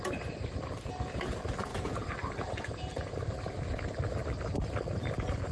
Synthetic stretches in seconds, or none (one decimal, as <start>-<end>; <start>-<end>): none

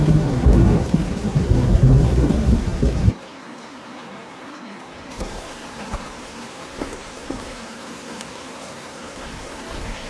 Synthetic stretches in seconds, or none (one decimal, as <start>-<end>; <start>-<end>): 0.0-10.1

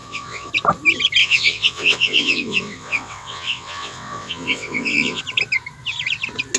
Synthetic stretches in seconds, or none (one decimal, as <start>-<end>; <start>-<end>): 0.0-0.5; 1.2-5.2

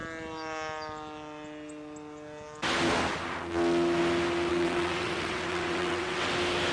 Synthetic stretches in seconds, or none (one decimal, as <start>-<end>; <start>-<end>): 4.5-6.3